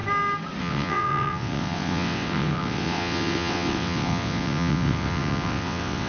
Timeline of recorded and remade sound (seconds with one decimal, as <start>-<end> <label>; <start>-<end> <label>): 0.0-0.6 recorded; 0.6-6.1 remade